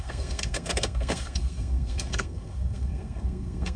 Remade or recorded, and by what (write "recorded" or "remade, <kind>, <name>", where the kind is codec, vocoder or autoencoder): remade, codec, SNAC